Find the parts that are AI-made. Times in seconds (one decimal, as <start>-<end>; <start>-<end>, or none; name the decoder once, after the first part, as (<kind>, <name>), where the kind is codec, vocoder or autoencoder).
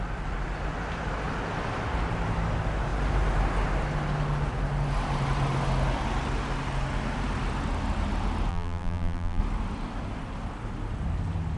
8.5-9.4 (vocoder, BigVGAN v2)